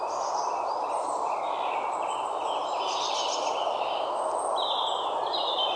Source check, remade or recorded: recorded